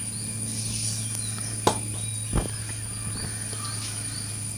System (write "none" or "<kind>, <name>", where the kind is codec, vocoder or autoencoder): none